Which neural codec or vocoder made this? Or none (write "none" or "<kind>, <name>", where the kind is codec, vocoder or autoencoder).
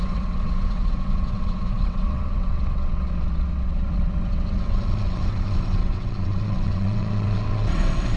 vocoder, WaveNeXt